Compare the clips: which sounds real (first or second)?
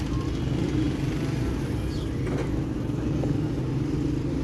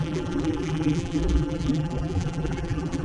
first